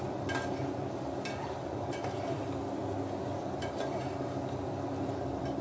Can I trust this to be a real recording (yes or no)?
no